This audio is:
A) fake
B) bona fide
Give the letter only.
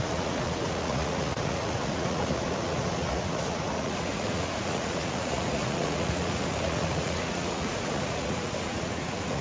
A